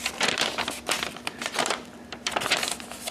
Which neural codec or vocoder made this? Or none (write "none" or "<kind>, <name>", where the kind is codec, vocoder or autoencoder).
vocoder, BigVGAN v2